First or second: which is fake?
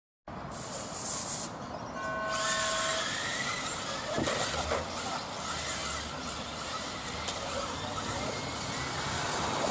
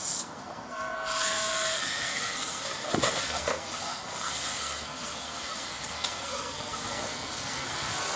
second